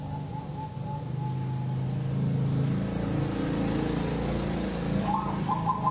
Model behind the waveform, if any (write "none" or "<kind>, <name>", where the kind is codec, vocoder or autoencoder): none